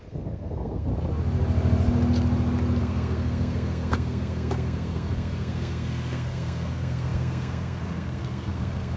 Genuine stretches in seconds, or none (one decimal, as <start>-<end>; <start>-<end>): 0.9-2.8